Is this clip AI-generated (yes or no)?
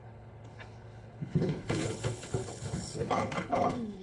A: yes